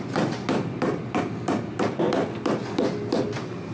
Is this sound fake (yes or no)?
no